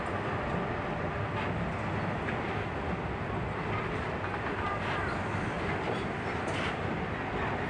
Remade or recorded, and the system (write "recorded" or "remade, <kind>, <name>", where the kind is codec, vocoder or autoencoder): recorded